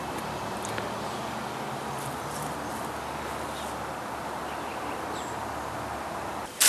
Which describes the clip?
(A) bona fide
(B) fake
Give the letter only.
A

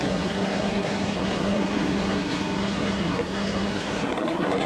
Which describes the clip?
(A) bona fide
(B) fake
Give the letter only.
B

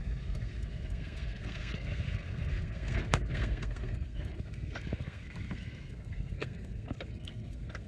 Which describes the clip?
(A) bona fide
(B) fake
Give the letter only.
B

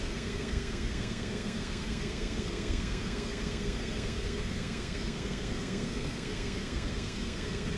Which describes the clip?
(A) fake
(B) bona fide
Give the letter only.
A